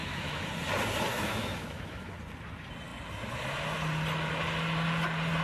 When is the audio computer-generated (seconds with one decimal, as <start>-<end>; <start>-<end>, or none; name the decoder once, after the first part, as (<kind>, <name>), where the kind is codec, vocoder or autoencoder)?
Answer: 0.0-0.5 (autoencoder, DAC-VAE); 1.1-2.1